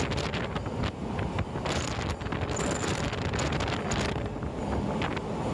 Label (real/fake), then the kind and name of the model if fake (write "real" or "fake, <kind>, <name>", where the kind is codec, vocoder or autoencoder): real